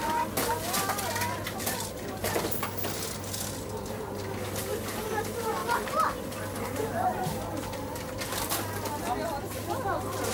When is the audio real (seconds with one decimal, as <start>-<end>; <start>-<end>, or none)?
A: 0.0-10.3